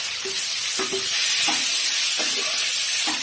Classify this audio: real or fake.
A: real